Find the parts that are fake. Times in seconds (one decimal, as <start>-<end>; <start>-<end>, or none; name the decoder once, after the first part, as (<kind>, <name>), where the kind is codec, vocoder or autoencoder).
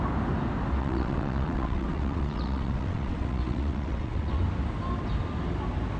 0.8-4.4 (vocoder, WaveNeXt)